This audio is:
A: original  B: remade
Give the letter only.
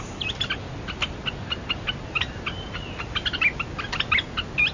A